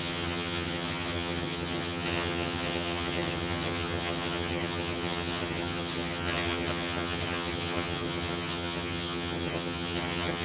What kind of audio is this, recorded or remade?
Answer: remade